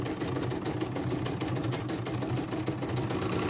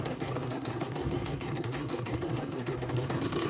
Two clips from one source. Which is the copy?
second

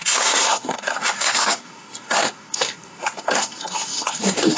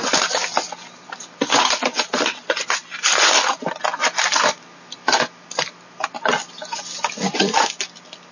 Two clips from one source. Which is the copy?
first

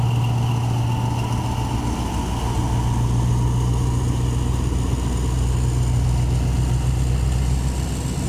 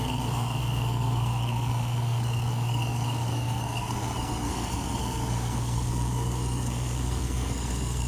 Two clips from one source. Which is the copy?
second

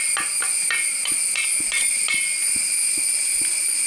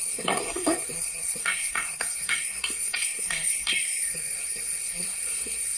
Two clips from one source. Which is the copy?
second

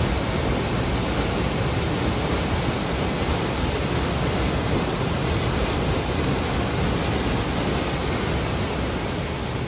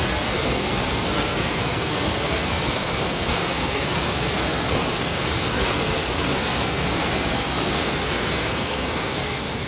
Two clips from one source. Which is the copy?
second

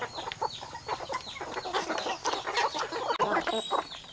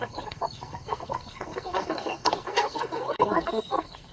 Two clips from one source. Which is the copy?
second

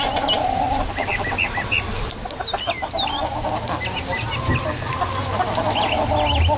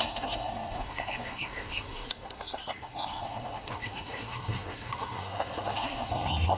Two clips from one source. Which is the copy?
second